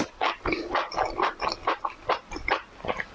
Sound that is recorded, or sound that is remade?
recorded